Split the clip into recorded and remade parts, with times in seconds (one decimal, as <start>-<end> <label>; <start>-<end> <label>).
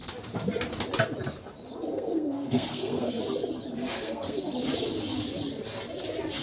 0.0-1.9 recorded; 1.9-3.2 remade; 3.2-3.9 recorded; 3.9-4.5 remade; 4.5-6.4 recorded